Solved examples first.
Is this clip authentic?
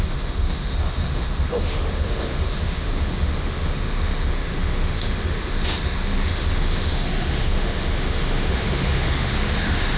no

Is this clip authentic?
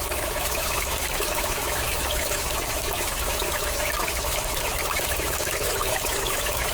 no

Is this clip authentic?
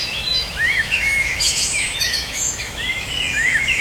no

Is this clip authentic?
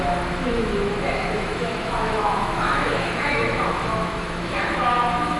no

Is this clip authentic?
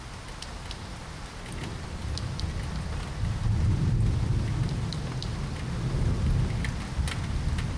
yes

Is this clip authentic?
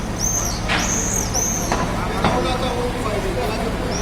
yes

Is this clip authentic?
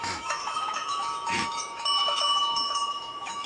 no